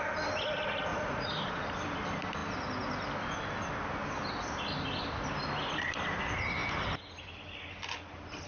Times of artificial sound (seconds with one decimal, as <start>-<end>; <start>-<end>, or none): 0.9-1.4